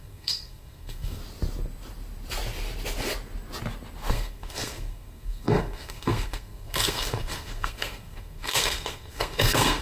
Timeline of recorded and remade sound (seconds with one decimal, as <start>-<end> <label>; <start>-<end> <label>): 0.0-1.2 remade; 1.2-4.1 recorded; 4.1-9.8 remade